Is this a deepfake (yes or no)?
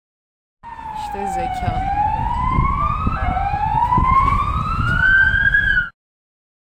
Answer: no